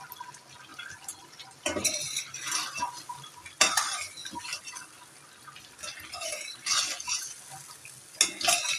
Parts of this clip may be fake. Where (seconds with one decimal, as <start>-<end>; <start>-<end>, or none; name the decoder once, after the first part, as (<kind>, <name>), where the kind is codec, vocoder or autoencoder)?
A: 0.7-3.8 (vocoder, BigVGAN v2); 4.2-4.7